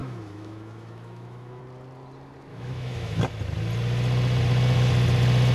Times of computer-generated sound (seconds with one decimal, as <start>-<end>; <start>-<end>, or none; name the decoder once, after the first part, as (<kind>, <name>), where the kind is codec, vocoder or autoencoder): 0.0-1.6 (autoencoder, DAC-VAE); 2.5-3.2